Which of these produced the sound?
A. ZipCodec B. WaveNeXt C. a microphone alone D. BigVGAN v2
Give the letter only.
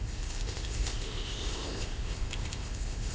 A